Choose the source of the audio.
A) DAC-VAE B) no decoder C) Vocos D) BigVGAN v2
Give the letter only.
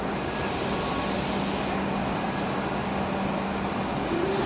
B